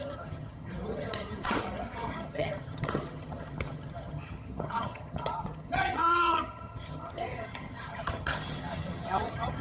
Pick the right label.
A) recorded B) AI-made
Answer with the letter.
B